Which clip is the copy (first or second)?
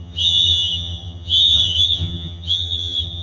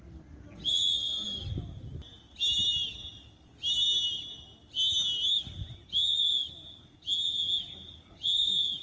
first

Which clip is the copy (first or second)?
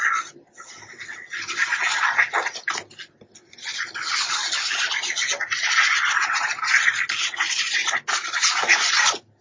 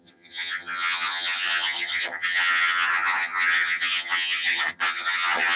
second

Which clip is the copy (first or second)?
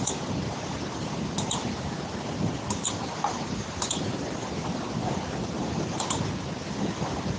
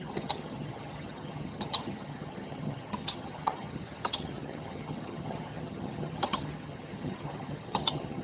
second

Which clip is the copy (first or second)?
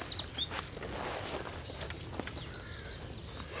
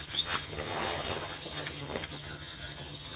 second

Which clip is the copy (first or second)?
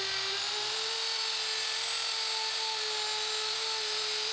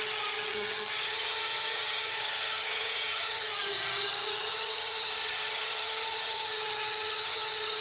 second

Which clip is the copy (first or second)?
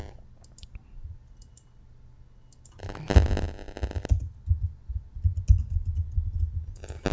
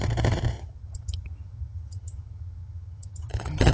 second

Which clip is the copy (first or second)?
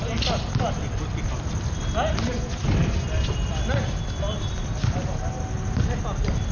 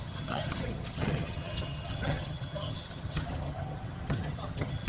second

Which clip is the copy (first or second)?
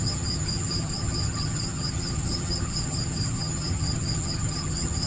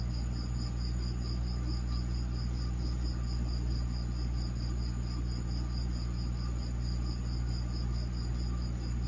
first